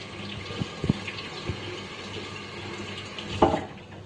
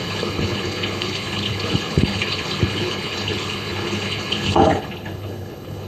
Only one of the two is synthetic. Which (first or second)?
second